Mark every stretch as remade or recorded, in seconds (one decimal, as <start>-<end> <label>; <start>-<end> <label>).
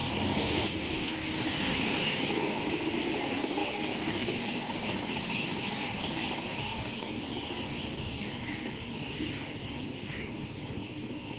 0.0-2.6 remade; 2.6-3.2 recorded; 3.2-11.4 remade